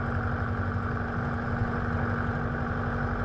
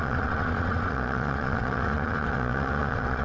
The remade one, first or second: second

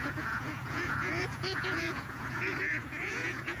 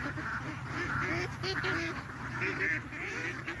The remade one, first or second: first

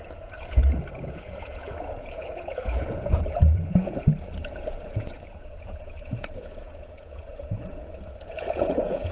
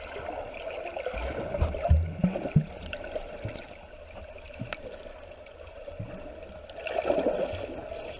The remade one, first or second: first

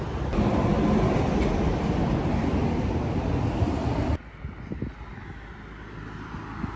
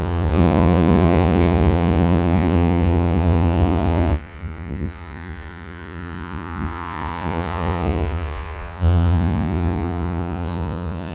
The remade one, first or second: second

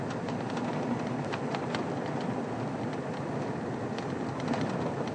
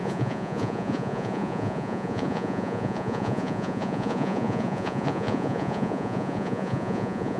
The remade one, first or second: second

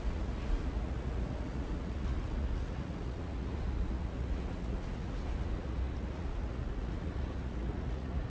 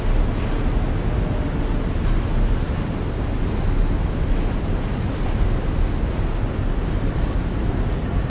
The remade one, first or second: first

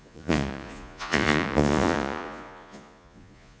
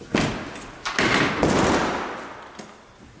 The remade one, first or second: first